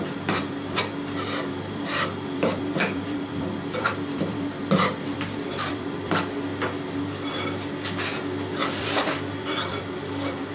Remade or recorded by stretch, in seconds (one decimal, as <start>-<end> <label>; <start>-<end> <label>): 0.0-6.5 remade; 6.5-8.8 recorded; 8.8-10.5 remade